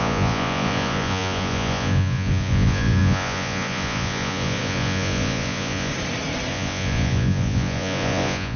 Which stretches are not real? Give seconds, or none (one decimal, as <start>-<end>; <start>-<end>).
0.0-5.9; 6.5-8.6